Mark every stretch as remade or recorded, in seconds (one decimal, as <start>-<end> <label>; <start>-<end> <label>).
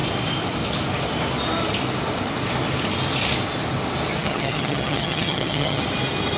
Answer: 0.0-4.2 recorded; 4.2-5.8 remade; 5.8-6.4 recorded